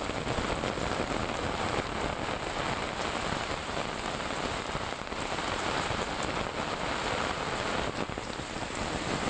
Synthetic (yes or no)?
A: no